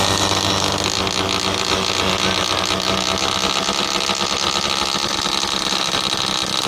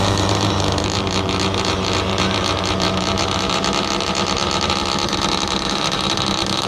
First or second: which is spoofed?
second